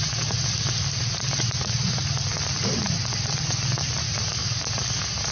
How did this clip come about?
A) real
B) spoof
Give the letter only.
A